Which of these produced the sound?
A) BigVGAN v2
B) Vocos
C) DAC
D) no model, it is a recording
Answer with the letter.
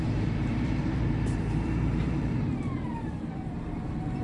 A